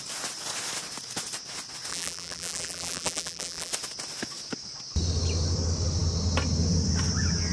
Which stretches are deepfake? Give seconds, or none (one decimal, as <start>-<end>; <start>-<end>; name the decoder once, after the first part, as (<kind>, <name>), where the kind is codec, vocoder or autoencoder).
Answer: 1.9-3.7 (vocoder, BigVGAN v2)